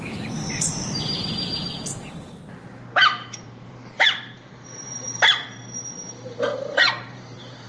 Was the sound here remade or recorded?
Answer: remade